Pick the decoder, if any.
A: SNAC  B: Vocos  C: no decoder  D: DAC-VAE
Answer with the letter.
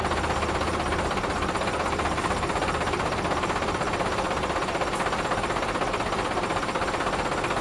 C